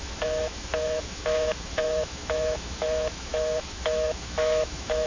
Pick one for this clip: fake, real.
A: fake